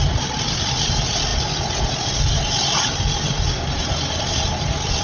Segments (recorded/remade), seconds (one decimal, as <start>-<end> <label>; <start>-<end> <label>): 0.0-5.0 recorded